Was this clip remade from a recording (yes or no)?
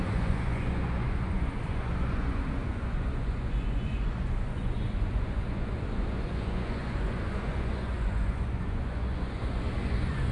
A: yes